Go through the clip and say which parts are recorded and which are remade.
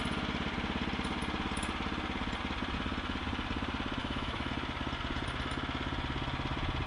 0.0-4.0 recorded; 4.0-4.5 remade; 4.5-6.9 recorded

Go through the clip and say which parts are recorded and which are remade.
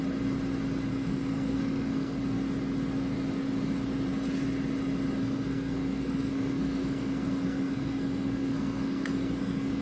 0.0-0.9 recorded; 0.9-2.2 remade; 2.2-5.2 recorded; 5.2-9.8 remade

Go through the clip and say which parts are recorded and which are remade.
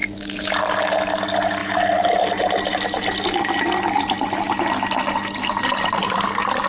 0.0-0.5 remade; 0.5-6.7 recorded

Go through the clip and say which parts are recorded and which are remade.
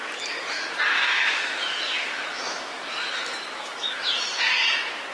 0.0-1.0 recorded; 1.0-4.1 remade; 4.1-5.1 recorded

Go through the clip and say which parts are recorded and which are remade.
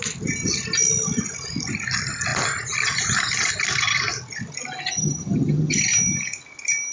0.0-4.9 recorded; 4.9-5.8 remade; 5.8-6.9 recorded